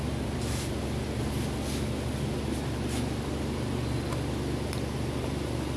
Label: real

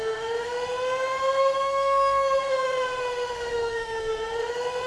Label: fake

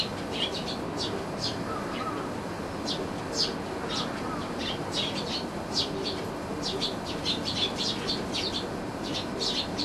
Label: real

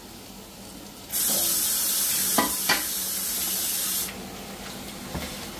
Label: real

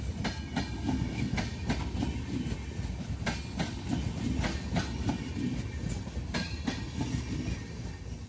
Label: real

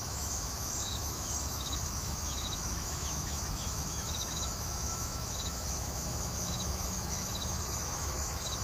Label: fake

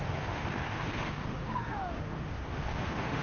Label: fake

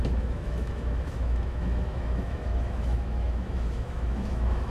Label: fake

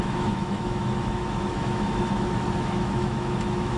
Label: fake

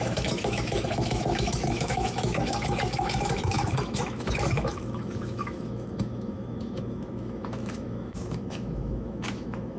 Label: fake